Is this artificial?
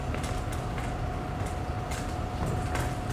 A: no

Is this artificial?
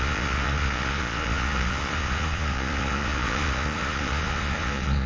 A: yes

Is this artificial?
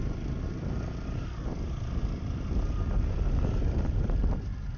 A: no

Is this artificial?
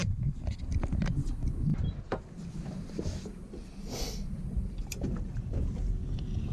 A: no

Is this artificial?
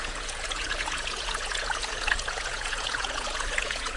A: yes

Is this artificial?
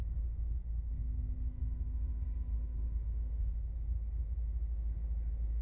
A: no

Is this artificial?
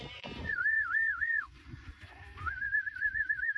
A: yes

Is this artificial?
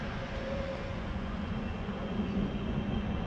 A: yes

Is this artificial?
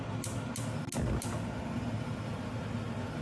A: no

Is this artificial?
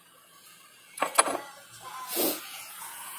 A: yes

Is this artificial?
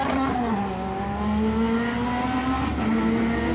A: no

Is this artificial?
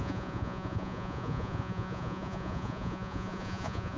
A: yes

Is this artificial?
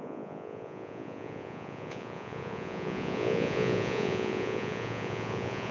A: yes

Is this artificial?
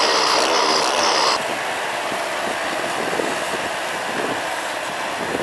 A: no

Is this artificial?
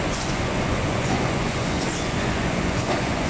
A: yes